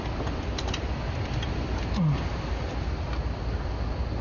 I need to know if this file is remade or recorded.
recorded